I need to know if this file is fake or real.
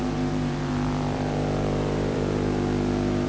fake